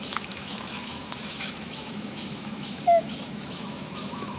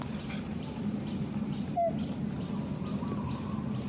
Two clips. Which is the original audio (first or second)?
second